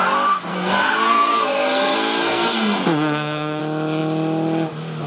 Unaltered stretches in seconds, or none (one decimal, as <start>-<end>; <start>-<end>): 0.0-0.5; 3.6-5.1

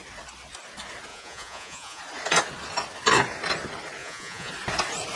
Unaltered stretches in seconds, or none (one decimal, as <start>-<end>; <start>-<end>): 0.0-1.1; 2.0-4.0; 4.5-5.2